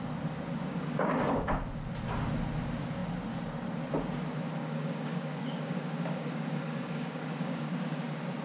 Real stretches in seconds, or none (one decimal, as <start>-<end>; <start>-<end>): 0.0-0.7; 1.5-4.6; 7.7-8.4